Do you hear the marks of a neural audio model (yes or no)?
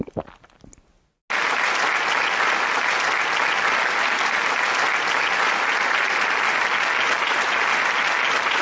no